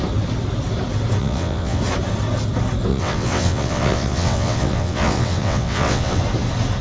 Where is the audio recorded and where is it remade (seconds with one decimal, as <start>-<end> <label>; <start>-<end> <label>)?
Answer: 0.0-1.2 recorded; 1.2-1.8 remade; 1.8-2.9 recorded; 2.9-6.2 remade; 6.2-6.8 recorded